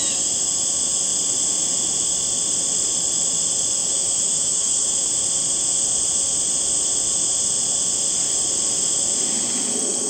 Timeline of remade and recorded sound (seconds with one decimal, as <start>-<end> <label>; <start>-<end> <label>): 0.0-3.8 recorded; 3.8-5.1 remade; 5.1-10.1 recorded